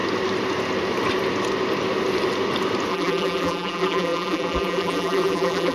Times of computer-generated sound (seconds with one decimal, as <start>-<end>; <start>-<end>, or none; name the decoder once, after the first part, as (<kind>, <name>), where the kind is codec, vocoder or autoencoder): 2.9-5.7 (vocoder, BigVGAN v2)